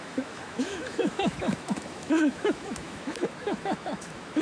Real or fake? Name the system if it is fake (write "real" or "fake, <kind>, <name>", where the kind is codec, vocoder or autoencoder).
fake, autoencoder, DAC-VAE